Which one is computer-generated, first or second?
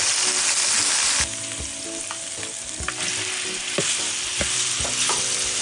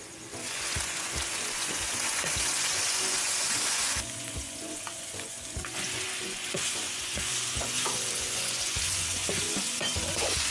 second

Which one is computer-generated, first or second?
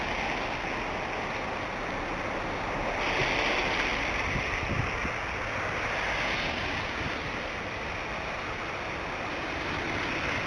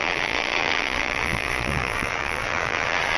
second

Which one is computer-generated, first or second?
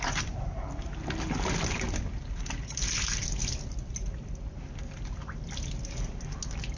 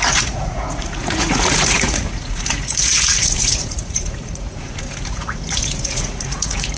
second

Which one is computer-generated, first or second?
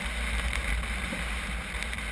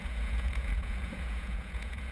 second